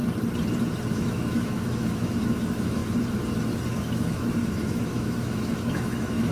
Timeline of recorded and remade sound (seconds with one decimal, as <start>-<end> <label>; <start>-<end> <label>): 0.0-0.9 recorded; 0.9-2.8 remade; 2.8-3.7 recorded; 3.7-6.3 remade